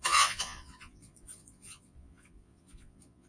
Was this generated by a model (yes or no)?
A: yes